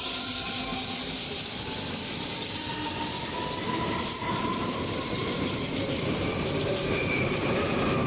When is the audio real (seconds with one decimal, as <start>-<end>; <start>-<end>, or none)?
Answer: 0.7-3.8